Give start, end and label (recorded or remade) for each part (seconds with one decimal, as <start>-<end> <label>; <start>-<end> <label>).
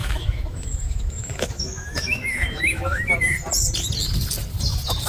0.0-3.1 remade; 3.1-5.1 recorded